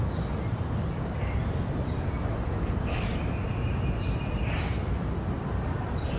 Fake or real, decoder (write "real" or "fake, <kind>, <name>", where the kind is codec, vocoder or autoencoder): real